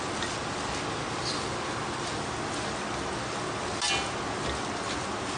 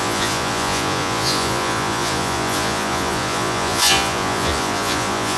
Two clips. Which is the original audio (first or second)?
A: first